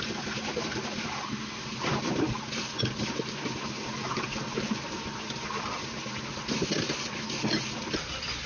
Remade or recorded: recorded